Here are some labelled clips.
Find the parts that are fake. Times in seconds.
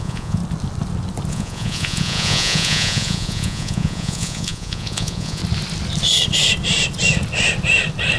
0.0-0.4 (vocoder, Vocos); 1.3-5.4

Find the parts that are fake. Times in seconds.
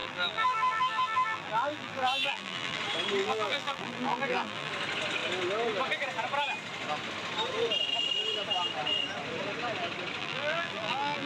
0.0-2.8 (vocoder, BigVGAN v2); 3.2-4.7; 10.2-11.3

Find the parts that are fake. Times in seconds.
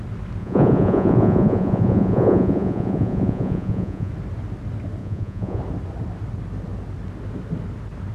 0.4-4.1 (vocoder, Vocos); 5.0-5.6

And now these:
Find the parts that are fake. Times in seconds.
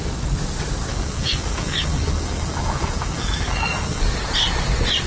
0.9-4.0 (autoencoder, DAC-VAE)